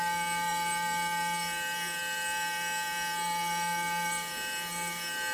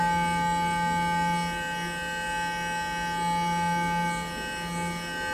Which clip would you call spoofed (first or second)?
first